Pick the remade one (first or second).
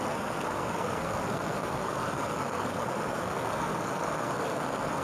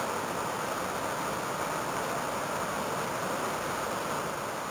first